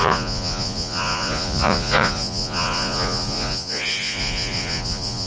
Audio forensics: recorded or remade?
remade